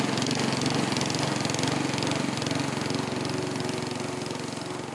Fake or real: real